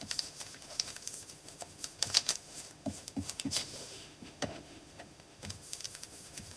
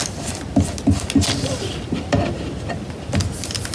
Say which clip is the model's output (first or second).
first